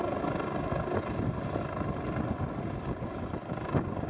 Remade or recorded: recorded